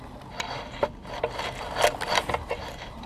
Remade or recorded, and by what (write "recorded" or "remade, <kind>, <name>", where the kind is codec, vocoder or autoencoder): recorded